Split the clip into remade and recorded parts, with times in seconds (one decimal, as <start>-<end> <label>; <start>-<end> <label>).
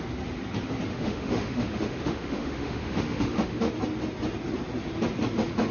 0.0-0.9 recorded; 0.9-3.7 remade; 3.7-5.7 recorded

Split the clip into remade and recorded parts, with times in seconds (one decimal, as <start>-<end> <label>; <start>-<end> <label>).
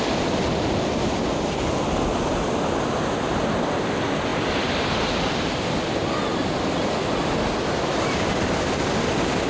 0.0-9.5 recorded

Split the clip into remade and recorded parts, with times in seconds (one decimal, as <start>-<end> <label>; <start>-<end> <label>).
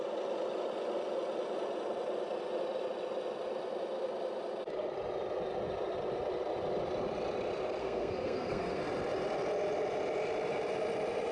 0.0-7.8 recorded; 7.8-8.8 remade; 8.8-11.3 recorded